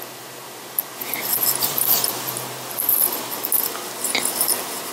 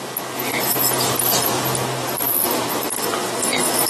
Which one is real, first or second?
second